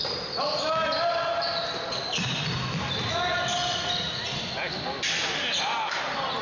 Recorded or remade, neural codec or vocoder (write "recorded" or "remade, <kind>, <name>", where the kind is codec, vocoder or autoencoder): recorded